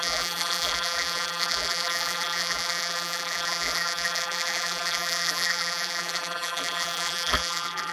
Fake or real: fake